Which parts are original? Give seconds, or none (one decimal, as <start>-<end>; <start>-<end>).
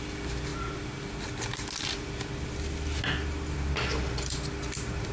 0.0-5.1